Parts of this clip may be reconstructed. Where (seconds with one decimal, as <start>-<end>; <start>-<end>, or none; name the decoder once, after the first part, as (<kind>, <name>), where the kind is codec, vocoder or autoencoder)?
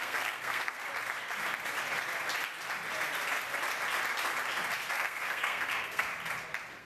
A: 0.0-0.8 (codec, SNAC); 4.9-6.1